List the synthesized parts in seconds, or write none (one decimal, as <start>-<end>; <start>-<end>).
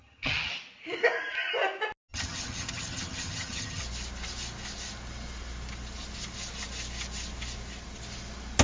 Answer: 0.0-0.5; 2.1-3.8